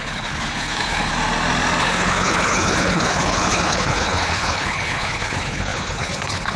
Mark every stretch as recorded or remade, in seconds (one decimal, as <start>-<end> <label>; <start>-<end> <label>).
0.0-1.1 remade; 1.1-1.8 recorded; 1.8-6.6 remade

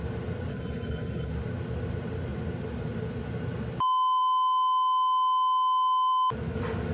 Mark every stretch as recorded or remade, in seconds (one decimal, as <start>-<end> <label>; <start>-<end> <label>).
0.0-0.5 recorded; 0.5-1.3 remade; 1.3-6.9 recorded

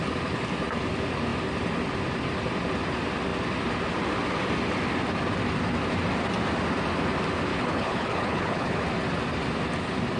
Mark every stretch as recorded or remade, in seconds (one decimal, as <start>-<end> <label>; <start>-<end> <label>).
0.0-7.5 recorded; 7.5-8.8 remade; 8.8-10.2 recorded